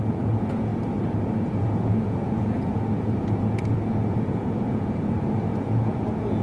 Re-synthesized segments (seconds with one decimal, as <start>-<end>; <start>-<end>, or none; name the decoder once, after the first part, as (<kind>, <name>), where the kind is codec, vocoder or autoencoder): 0.0-0.7 (vocoder, Vocos); 1.4-6.4